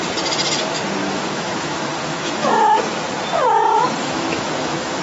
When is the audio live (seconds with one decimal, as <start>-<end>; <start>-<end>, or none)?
0.0-1.0; 2.5-4.0